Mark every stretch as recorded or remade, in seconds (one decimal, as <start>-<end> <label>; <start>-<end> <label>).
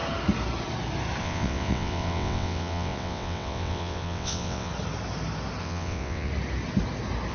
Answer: 0.0-1.2 recorded; 1.2-4.7 remade; 4.7-5.6 recorded; 5.6-6.3 remade; 6.3-7.3 recorded